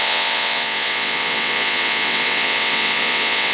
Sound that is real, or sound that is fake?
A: fake